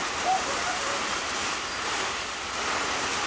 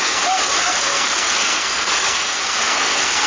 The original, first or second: first